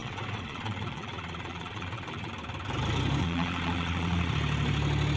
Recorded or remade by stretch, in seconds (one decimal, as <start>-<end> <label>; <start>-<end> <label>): 0.0-2.3 remade; 2.3-3.2 recorded; 3.2-4.3 remade; 4.3-5.2 recorded